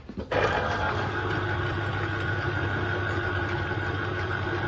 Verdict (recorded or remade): recorded